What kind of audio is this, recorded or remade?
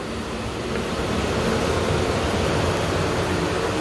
recorded